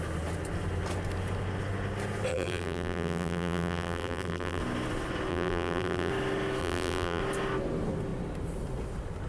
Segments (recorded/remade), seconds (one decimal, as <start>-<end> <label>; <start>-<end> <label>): 0.0-2.3 recorded; 2.3-4.6 remade; 4.6-5.3 recorded; 5.3-6.1 remade; 6.1-6.6 recorded; 6.6-7.2 remade; 7.2-9.3 recorded